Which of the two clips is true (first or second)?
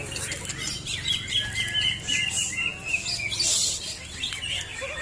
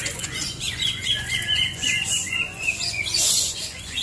first